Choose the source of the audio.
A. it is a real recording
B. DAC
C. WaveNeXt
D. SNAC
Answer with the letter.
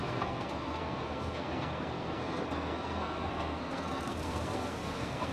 D